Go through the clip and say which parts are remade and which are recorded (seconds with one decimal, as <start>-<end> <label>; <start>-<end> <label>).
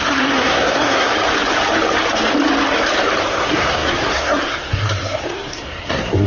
0.0-1.1 remade; 1.1-3.3 recorded; 3.3-6.3 remade